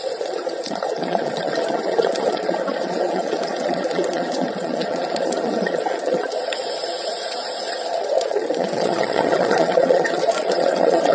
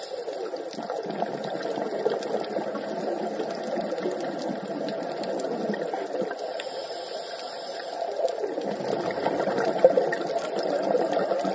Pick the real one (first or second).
second